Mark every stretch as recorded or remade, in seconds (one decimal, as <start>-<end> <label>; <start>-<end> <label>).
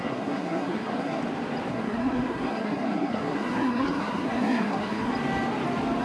0.0-1.2 remade; 1.2-1.7 recorded; 1.7-5.1 remade; 5.1-6.0 recorded